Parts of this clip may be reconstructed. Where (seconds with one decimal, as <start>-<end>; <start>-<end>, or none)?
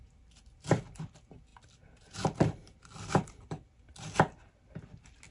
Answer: none